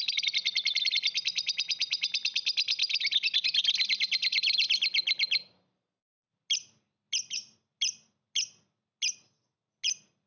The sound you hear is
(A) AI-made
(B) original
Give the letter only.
B